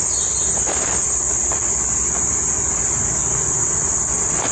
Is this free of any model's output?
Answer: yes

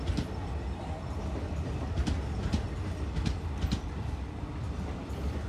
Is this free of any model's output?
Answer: yes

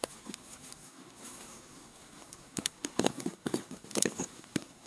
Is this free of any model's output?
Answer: no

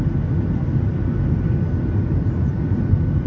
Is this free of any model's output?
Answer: yes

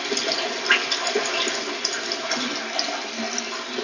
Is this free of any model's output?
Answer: yes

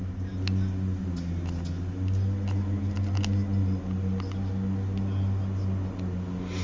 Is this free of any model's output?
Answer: yes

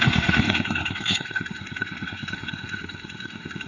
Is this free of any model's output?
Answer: no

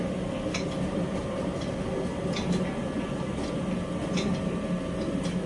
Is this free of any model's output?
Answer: yes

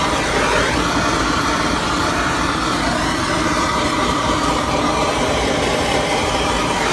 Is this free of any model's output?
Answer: no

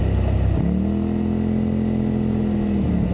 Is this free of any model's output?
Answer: yes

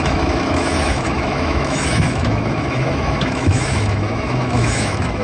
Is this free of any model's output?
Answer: no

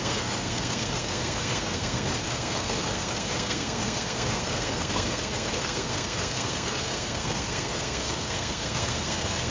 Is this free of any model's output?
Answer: no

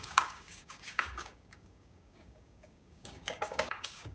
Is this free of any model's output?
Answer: no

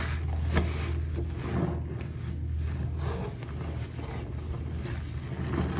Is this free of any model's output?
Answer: yes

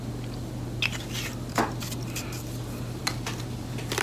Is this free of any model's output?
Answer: yes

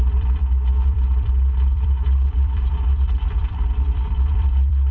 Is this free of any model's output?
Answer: no